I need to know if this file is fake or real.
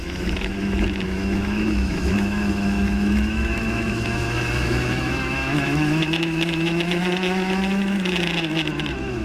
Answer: fake